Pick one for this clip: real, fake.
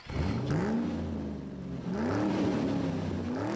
real